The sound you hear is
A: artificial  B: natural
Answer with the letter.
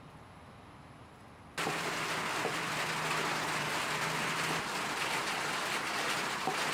B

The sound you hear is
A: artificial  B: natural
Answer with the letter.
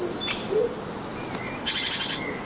B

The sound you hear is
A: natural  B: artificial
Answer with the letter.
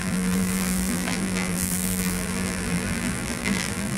B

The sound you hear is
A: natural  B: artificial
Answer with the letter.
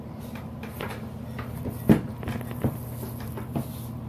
A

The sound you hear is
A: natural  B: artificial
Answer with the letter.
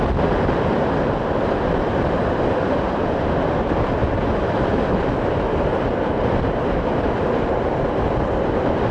B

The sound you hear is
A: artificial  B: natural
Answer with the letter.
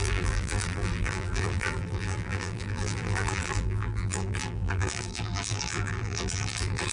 A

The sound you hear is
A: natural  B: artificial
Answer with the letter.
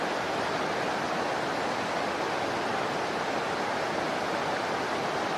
A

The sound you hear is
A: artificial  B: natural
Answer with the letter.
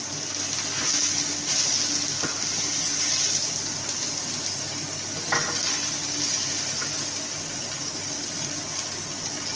B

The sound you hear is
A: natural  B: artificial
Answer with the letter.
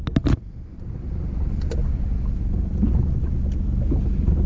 A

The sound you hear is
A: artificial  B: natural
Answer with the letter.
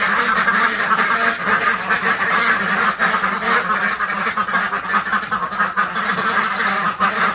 B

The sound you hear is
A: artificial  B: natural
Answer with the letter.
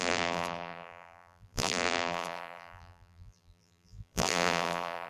A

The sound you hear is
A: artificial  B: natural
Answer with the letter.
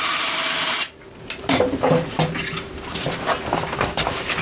A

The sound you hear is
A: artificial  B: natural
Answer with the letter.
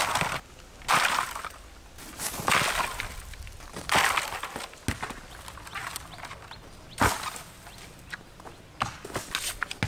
B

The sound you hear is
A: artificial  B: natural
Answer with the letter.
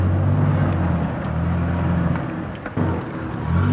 B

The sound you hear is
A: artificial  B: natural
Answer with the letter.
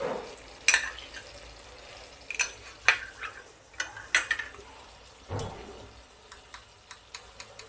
B